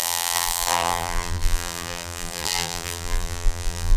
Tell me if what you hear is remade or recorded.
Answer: remade